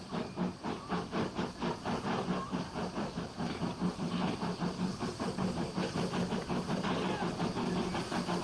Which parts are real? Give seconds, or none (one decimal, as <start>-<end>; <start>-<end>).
0.0-8.4